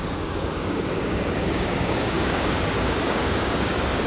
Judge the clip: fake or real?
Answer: fake